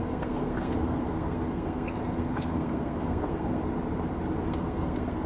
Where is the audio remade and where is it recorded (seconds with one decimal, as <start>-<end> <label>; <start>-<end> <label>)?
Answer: 0.0-3.6 remade; 3.6-4.4 recorded; 4.4-5.3 remade